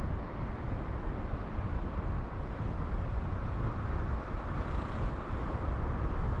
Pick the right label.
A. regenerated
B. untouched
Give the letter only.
A